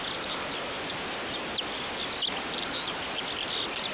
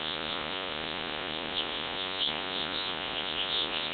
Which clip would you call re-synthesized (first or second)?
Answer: second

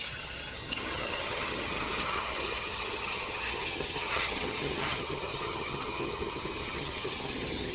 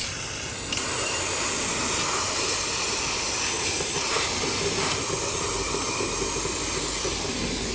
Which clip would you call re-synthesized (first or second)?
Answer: first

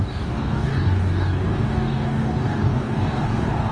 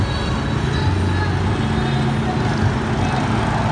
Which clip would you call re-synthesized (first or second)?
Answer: first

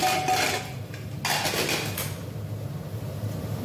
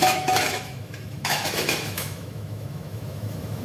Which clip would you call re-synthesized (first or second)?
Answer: second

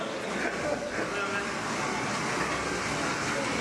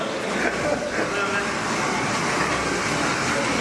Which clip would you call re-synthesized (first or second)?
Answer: second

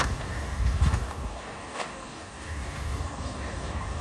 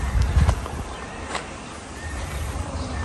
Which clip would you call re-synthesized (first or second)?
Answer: first